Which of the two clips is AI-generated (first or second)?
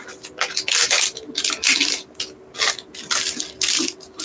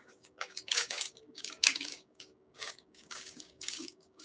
second